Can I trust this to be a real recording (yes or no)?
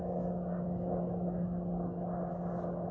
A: yes